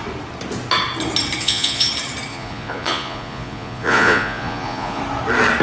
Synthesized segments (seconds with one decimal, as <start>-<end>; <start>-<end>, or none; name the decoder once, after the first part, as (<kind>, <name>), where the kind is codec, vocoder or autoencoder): 1.4-1.9 (vocoder, Vocos); 2.3-5.0

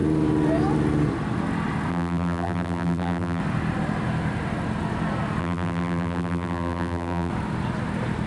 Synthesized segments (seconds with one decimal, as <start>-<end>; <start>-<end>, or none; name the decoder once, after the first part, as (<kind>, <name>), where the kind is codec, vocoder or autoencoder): 1.9-3.4 (vocoder, BigVGAN v2); 5.4-7.3

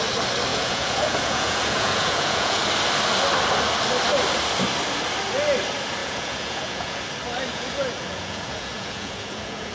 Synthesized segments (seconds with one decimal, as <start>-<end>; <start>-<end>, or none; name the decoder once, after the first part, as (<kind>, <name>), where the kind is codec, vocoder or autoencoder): 0.5-2.6 (vocoder, Vocos); 6.0-7.0; 7.5-9.7

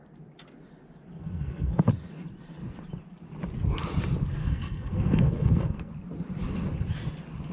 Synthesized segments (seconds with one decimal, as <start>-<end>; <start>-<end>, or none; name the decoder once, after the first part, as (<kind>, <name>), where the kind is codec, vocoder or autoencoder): 1.2-1.9 (codec, SNAC); 4.4-5.9

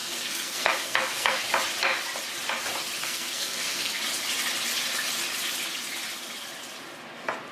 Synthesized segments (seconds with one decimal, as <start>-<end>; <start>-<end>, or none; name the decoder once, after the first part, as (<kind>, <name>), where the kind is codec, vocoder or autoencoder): 0.0-1.4 (codec, SNAC); 3.0-4.0

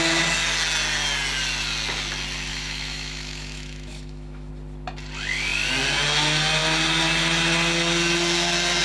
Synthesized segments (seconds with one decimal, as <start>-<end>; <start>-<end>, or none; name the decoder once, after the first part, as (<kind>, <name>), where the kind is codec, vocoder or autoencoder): 2.5-4.5 (autoencoder, DAC-VAE)